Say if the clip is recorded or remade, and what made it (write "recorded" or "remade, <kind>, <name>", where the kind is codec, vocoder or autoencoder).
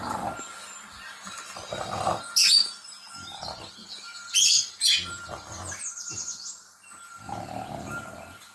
recorded